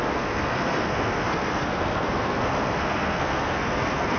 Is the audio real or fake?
fake